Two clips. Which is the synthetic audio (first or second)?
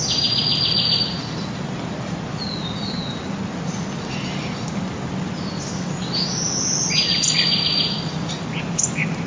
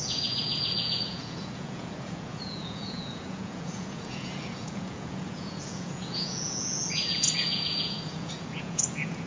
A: second